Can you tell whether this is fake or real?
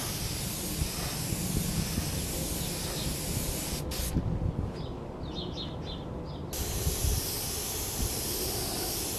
real